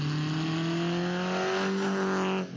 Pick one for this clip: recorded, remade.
recorded